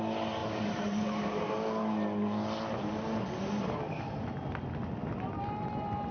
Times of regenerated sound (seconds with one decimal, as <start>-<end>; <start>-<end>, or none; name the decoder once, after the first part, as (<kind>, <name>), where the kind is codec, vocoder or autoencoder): 0.4-1.5 (vocoder, BigVGAN v2)

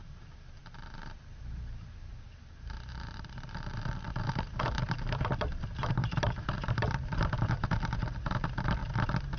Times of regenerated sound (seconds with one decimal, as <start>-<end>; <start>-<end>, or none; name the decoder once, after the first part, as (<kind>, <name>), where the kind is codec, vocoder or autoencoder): 0.0-8.8 (vocoder, BigVGAN v2)

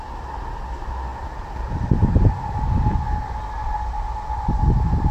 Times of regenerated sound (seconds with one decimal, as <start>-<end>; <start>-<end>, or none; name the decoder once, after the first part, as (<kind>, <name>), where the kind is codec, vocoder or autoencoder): none

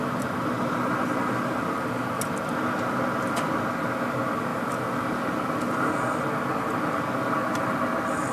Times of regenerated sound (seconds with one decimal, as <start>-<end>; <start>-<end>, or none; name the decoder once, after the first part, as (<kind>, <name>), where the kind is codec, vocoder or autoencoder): 4.5-5.9 (vocoder, BigVGAN v2)

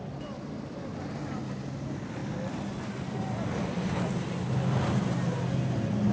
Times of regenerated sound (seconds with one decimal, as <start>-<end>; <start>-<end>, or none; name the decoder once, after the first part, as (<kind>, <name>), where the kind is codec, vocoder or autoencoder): 2.2-4.0 (vocoder, BigVGAN v2)

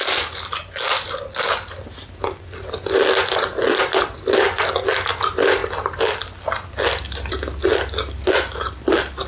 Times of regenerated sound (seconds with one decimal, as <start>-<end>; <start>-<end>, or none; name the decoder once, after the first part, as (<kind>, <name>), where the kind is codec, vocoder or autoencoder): none

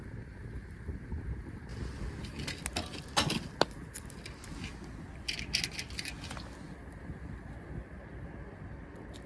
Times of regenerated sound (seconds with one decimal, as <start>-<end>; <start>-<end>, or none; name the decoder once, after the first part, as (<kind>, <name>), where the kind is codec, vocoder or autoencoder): none